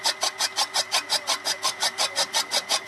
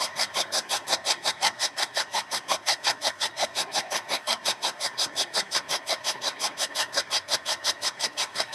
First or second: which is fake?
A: second